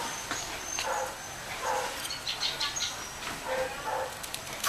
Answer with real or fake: fake